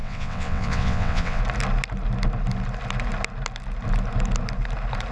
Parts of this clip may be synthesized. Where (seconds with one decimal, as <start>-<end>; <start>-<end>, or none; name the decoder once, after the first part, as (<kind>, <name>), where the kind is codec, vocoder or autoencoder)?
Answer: 0.0-1.4 (vocoder, WaveNeXt)